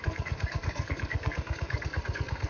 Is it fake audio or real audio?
fake